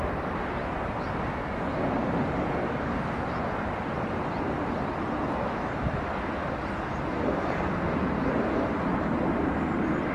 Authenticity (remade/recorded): recorded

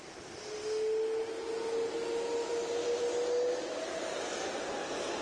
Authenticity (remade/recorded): recorded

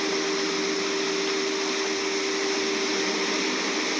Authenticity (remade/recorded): recorded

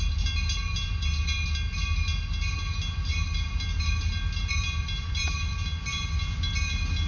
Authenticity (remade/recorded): recorded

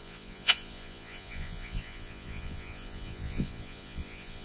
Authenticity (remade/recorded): remade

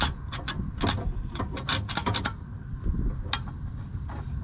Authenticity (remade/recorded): recorded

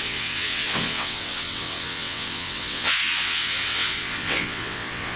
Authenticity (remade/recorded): remade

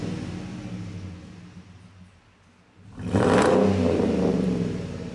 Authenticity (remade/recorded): recorded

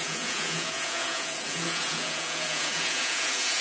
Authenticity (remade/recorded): remade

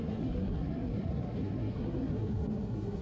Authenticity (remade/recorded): remade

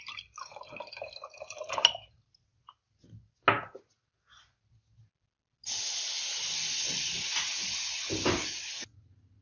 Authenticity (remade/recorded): recorded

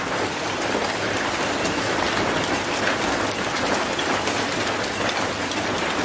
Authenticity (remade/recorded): recorded